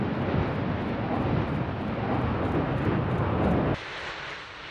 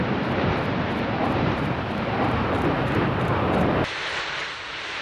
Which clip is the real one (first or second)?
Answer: first